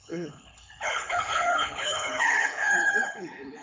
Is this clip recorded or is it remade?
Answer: remade